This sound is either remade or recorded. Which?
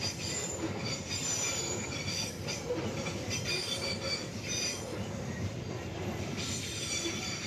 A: recorded